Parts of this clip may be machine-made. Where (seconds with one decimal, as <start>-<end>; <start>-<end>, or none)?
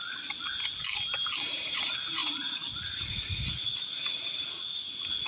1.4-5.3